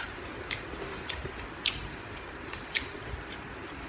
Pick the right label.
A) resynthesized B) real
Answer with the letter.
A